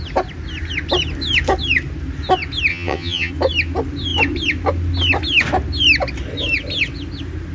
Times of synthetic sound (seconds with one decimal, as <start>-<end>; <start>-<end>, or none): 2.7-3.3